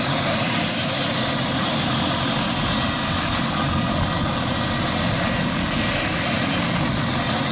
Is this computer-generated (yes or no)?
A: no